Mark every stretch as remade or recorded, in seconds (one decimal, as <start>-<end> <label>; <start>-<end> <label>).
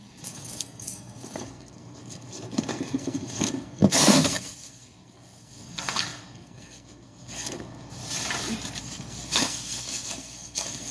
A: 0.0-8.0 remade; 8.0-8.8 recorded; 8.8-10.9 remade